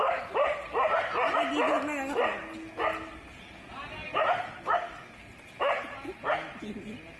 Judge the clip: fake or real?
real